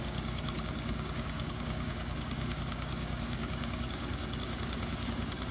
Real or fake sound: fake